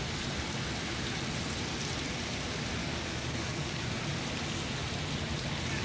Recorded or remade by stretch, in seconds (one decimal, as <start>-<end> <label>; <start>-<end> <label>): 0.0-2.8 recorded; 2.8-3.8 remade; 3.8-5.8 recorded

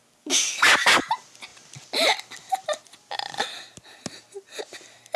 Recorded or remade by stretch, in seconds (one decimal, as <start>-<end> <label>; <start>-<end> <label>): 0.0-1.0 remade; 1.0-5.2 recorded

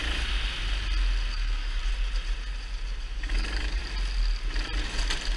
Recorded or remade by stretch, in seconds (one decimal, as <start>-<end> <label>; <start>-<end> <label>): 0.0-1.3 recorded; 1.3-1.8 remade; 1.8-3.0 recorded; 3.0-3.8 remade; 3.8-5.4 recorded

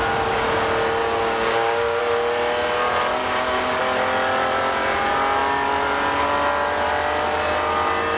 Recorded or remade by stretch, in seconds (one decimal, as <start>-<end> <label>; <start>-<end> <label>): 0.0-1.0 recorded; 1.0-2.0 remade; 2.0-3.2 recorded; 3.2-3.8 remade; 3.8-8.2 recorded

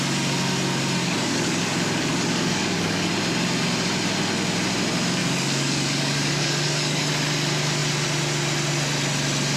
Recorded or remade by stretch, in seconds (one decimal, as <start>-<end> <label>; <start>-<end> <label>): 0.0-1.0 recorded; 1.0-3.1 remade; 3.1-5.2 recorded; 5.2-7.1 remade; 7.1-9.6 recorded

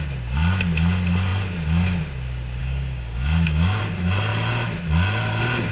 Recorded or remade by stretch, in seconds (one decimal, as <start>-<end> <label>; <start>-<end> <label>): 0.0-2.6 recorded; 2.6-3.8 remade; 3.8-5.7 recorded